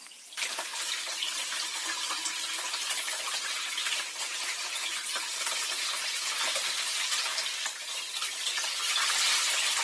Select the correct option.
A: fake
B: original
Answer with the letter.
B